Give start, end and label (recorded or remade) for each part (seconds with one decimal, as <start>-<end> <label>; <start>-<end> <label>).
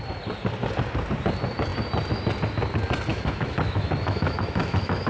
0.0-3.1 recorded; 3.1-5.1 remade